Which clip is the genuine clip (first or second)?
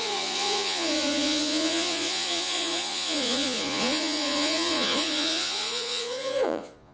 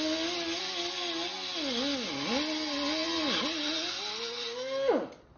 second